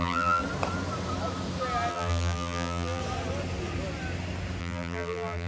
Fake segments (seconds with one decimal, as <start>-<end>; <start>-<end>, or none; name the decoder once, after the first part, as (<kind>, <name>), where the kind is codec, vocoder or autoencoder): 0.0-0.4 (vocoder, BigVGAN v2); 1.9-3.0; 4.6-5.5